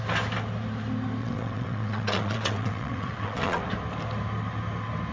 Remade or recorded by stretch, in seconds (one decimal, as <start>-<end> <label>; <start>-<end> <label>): 0.0-1.2 recorded; 1.2-3.6 remade; 3.6-5.1 recorded